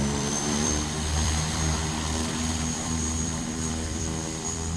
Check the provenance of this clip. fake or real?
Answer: fake